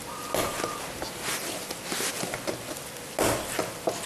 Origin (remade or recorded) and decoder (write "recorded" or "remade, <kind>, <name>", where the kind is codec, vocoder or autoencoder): recorded